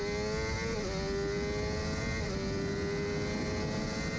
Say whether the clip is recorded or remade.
recorded